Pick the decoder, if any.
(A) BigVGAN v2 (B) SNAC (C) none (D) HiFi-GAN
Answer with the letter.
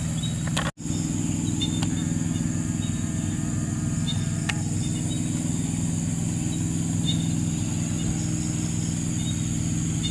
C